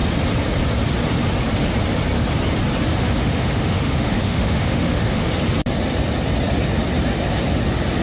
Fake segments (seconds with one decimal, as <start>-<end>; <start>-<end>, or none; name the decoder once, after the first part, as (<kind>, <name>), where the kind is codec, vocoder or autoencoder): 2.9-5.3 (autoencoder, DAC-VAE)